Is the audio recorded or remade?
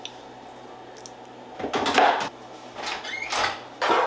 recorded